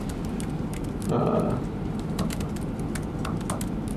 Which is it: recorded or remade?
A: recorded